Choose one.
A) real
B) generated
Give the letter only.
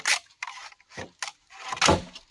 A